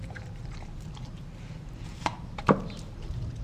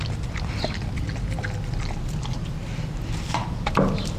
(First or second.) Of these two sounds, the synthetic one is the first